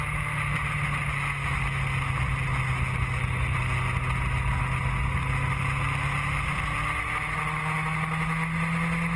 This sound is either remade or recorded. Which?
recorded